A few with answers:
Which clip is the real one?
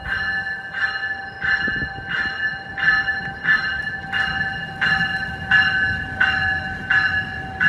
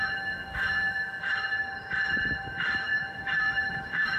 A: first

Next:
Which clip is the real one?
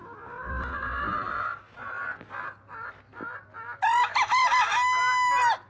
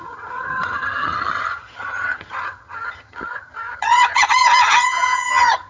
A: first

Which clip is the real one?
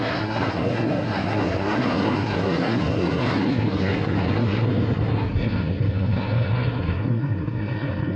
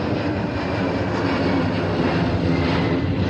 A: second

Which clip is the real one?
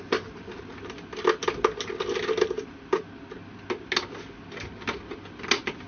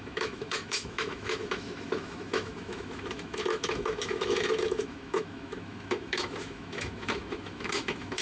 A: first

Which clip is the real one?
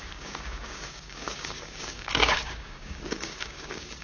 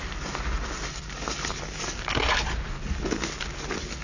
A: second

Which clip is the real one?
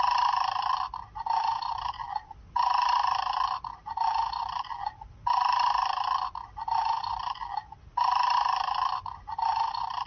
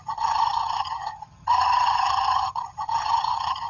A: first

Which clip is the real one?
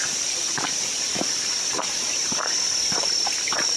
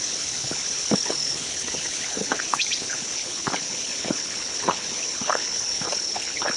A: first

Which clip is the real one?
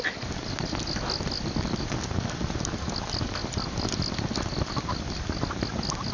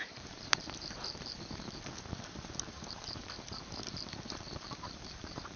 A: first